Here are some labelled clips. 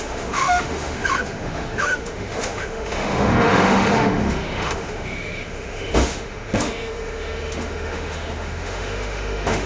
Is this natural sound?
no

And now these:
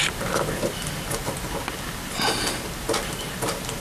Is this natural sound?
yes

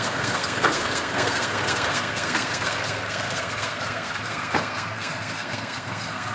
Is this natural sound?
no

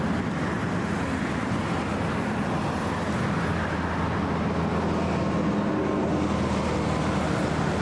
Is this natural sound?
yes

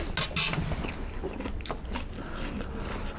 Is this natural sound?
yes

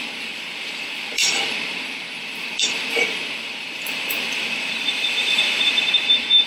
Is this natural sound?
no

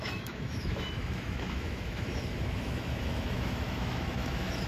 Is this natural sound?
no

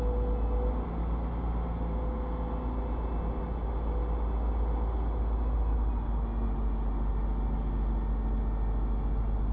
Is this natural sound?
yes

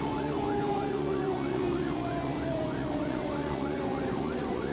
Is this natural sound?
no